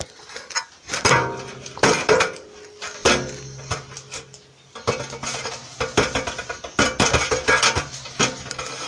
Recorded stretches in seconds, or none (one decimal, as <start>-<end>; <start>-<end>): 0.0-8.9